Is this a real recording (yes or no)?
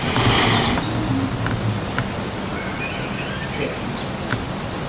yes